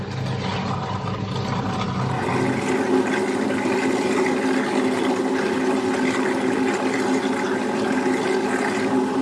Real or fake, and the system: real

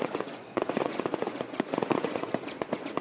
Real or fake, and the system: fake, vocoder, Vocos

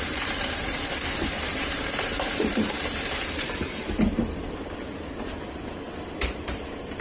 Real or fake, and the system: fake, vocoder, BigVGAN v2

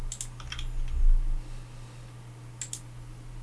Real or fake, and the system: real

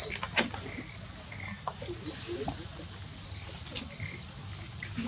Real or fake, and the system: real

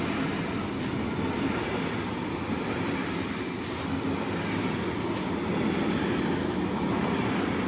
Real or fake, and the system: real